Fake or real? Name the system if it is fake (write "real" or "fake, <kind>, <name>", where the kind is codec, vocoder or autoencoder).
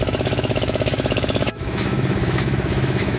fake, autoencoder, DAC-VAE